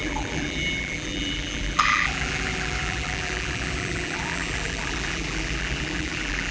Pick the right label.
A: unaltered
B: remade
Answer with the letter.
B